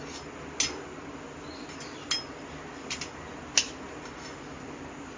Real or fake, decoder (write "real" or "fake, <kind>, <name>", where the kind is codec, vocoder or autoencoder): real